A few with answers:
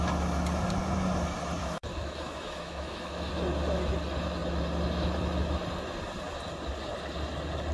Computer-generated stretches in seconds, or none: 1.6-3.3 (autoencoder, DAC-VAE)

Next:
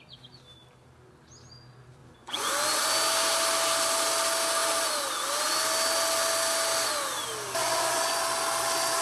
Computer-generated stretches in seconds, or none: 2.0-2.5 (vocoder, Vocos); 7.6-8.2

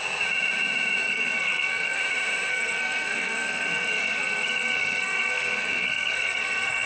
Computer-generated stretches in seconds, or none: 1.0-2.0 (codec, SNAC); 2.5-6.9